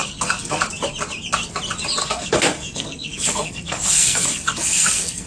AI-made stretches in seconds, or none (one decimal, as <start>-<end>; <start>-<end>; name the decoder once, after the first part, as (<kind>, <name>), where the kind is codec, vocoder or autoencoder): 0.0-0.6 (codec, SNAC); 2.0-5.3